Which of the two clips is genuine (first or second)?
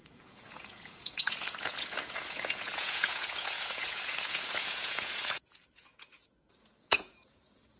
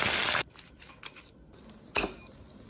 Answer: second